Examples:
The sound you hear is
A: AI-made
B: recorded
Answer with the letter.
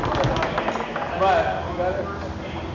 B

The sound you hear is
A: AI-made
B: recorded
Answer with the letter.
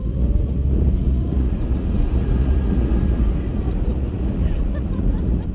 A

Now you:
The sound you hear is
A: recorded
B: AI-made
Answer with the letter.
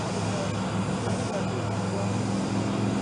A